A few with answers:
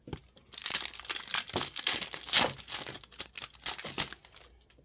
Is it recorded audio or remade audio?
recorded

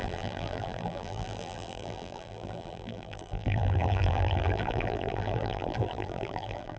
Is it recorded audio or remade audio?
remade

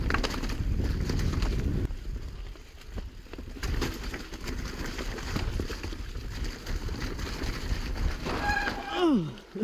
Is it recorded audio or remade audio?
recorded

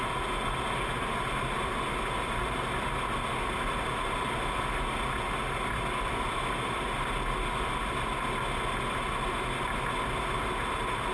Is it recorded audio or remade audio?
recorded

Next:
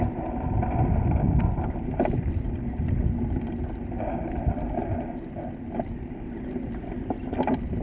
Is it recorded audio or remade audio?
recorded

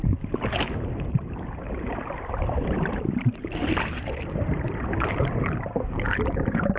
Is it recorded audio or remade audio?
remade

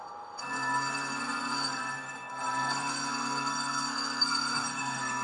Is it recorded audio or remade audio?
remade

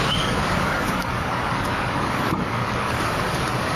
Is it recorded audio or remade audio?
remade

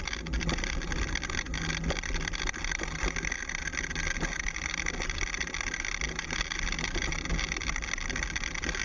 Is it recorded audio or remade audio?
recorded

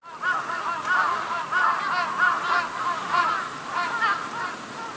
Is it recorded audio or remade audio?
recorded